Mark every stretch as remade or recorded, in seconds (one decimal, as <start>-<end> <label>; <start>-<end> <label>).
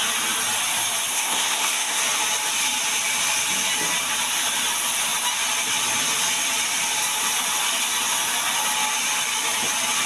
0.0-1.1 recorded; 1.1-2.0 remade; 2.0-10.1 recorded